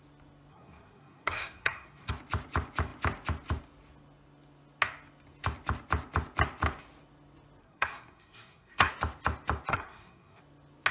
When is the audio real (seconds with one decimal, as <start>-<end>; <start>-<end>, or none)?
0.0-0.5; 2.1-7.6; 8.9-9.7; 10.4-10.9